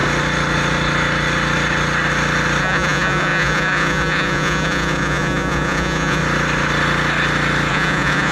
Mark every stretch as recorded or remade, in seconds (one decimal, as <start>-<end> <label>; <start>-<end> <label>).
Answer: 0.0-2.6 recorded; 2.6-6.2 remade; 6.2-7.7 recorded; 7.7-8.3 remade

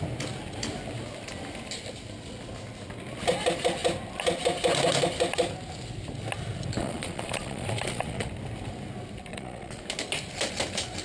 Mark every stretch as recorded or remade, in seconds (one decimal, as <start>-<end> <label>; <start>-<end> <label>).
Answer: 0.0-6.8 recorded; 6.8-8.3 remade; 8.3-9.3 recorded; 9.3-9.8 remade; 9.8-11.0 recorded

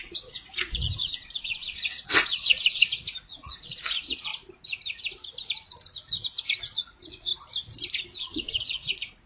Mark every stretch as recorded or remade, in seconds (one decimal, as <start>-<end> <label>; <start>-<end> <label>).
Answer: 0.0-4.3 remade; 4.3-6.6 recorded; 6.6-7.3 remade; 7.3-8.0 recorded; 8.0-9.3 remade

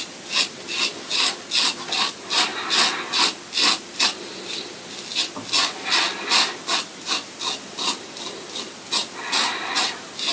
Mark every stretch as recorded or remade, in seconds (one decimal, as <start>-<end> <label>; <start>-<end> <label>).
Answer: 0.0-10.3 recorded

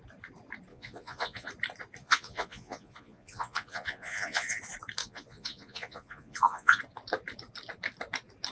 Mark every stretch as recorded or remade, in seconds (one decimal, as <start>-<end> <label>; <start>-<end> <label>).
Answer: 0.0-0.7 recorded; 0.7-1.5 remade; 1.5-2.0 recorded; 2.0-4.6 remade; 4.6-5.0 recorded; 5.0-6.8 remade; 6.8-8.5 recorded

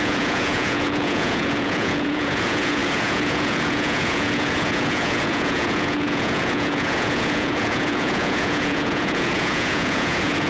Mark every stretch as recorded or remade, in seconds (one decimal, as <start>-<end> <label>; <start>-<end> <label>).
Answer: 0.0-10.5 remade